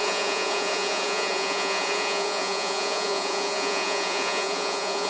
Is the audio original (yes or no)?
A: no